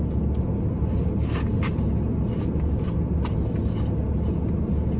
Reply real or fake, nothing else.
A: real